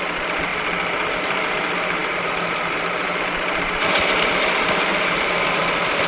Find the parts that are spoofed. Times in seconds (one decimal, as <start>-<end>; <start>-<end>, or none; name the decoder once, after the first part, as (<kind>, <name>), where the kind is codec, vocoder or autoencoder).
0.0-0.5 (vocoder, BigVGAN v2); 1.2-6.1